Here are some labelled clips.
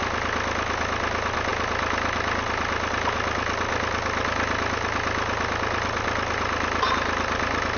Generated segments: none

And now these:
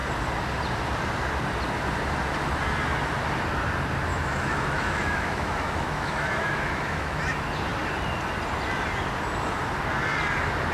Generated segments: 4.1-7.2 (autoencoder, DAC-VAE)

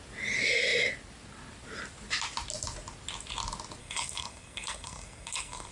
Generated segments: 3.8-5.7 (codec, SNAC)

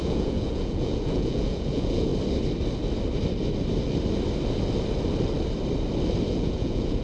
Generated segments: 0.0-2.1 (vocoder, Vocos); 6.3-7.0

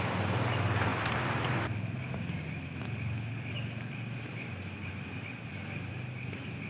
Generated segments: none

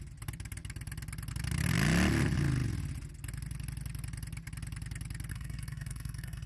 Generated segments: 5.3-6.5 (codec, SNAC)

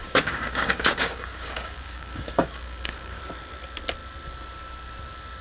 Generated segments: 0.0-3.2 (codec, DAC)

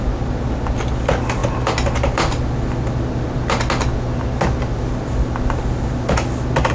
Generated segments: none